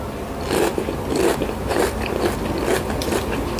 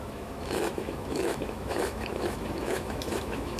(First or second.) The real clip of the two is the first